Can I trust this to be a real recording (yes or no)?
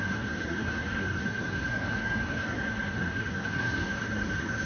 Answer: no